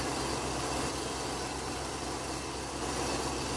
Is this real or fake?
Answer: real